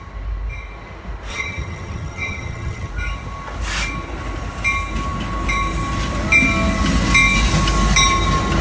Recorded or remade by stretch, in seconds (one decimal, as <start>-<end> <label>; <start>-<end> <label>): 0.0-1.3 recorded; 1.3-2.9 remade; 2.9-8.6 recorded